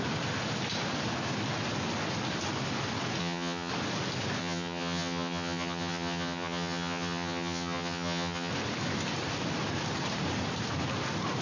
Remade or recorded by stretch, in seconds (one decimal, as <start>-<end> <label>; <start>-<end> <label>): 0.0-3.2 recorded; 3.2-3.7 remade; 3.7-4.4 recorded; 4.4-8.5 remade; 8.5-11.4 recorded